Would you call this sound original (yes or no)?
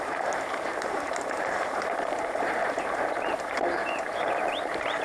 no